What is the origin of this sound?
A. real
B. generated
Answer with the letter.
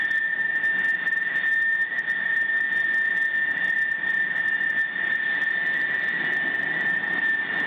A